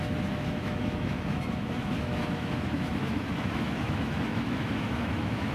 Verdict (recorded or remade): remade